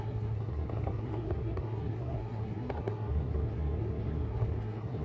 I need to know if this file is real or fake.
fake